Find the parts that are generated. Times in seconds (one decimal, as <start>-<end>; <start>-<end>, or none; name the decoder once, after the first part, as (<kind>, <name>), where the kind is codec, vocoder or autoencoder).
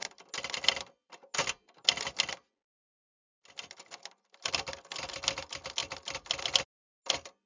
none